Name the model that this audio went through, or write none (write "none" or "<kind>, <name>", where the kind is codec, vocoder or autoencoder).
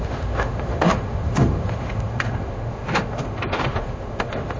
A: autoencoder, DAC-VAE